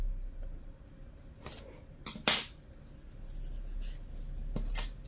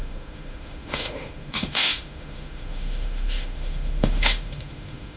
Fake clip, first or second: second